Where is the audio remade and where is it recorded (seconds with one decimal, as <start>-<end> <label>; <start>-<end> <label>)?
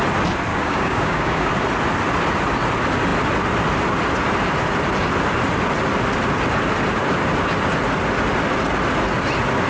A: 0.0-0.5 recorded; 0.5-1.5 remade; 1.5-9.7 recorded